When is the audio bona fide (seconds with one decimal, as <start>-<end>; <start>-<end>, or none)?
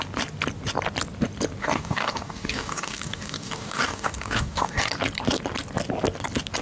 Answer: 0.0-1.6; 4.9-6.6